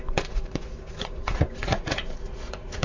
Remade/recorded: remade